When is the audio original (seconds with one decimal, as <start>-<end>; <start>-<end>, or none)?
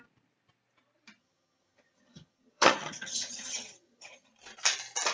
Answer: 0.0-1.2; 4.3-5.1